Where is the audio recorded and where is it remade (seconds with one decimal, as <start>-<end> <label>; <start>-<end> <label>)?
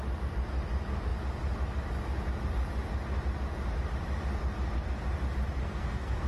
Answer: 0.0-5.6 recorded; 5.6-6.3 remade